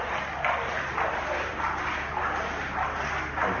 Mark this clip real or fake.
real